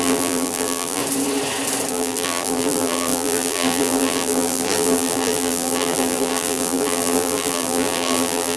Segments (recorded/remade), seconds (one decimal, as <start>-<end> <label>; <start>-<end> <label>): 0.0-1.0 remade; 1.0-1.9 recorded; 1.9-8.6 remade